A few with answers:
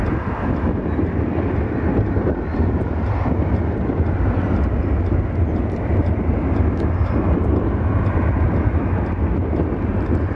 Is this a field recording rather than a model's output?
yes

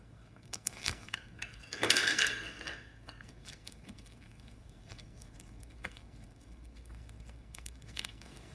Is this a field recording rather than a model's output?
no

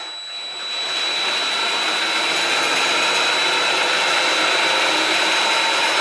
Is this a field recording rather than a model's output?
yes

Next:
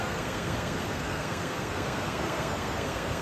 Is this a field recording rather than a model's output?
no